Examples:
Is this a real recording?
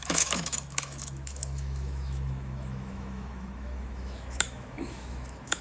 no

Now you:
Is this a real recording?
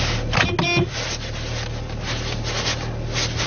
yes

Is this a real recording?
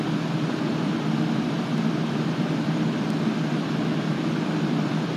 yes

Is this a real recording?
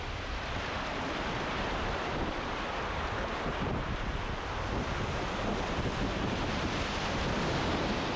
yes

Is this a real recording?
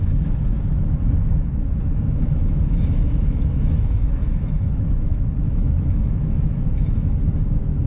no